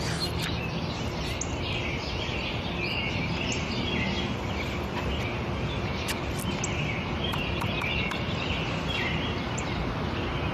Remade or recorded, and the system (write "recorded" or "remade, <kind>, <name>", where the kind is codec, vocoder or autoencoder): recorded